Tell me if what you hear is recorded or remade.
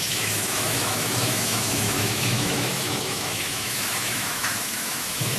remade